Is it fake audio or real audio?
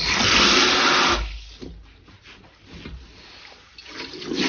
real